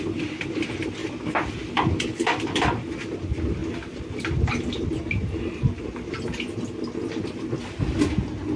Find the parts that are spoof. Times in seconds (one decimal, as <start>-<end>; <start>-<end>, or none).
none